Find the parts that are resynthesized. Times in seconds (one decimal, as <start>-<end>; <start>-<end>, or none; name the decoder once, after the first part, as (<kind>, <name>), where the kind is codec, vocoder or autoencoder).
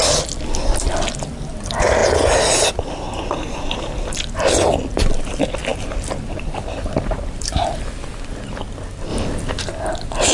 5.7-7.5 (vocoder, BigVGAN v2)